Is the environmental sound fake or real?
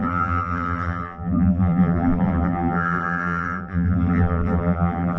fake